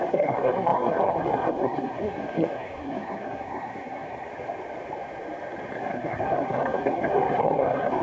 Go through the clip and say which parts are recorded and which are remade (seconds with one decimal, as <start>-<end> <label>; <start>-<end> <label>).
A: 0.0-4.3 remade; 4.3-5.7 recorded; 5.7-8.0 remade